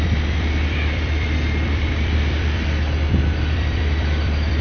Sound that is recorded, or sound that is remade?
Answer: remade